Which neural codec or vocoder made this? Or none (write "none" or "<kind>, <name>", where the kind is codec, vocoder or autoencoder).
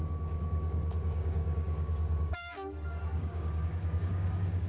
codec, DAC